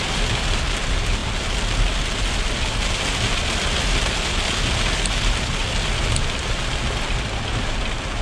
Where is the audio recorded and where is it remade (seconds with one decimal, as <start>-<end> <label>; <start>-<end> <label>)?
0.0-8.2 recorded